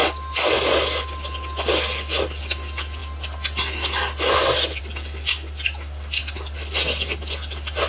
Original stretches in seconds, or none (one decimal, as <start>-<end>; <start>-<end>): 0.0-7.9